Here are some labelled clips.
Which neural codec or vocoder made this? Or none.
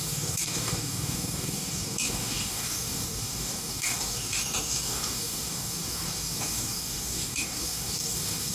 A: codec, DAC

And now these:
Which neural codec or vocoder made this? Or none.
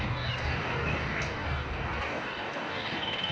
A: codec, DAC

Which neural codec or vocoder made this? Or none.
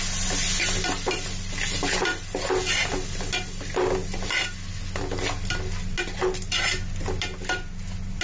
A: none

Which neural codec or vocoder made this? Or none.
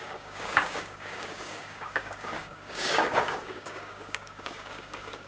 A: codec, DAC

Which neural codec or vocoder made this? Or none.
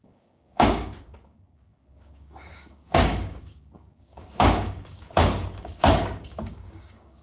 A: codec, DAC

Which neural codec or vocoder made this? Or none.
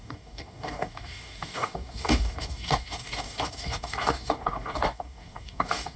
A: codec, DAC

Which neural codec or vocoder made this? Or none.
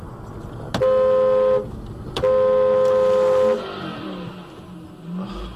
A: none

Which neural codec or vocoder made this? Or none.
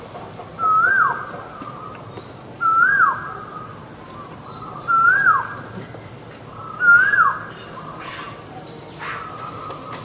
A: none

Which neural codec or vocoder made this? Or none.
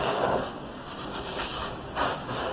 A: codec, DAC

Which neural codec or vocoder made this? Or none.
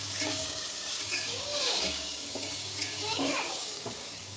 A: codec, DAC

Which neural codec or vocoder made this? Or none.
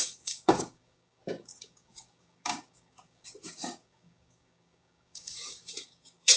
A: codec, DAC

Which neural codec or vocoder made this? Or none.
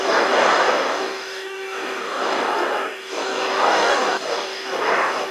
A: codec, DAC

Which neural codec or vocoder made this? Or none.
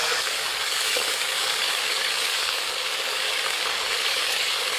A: codec, DAC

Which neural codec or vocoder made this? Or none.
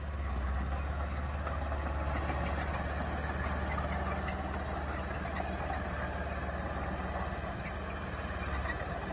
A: none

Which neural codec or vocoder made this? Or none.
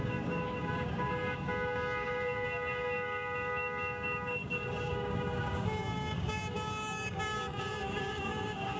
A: codec, DAC